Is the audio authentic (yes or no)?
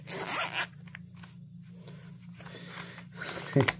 yes